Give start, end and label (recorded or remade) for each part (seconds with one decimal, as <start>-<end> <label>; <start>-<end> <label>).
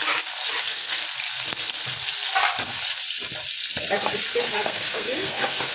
0.0-0.6 recorded; 0.6-1.0 remade; 1.0-4.4 recorded; 4.4-5.7 remade